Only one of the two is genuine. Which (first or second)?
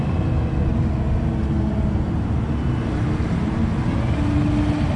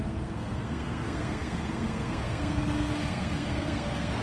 first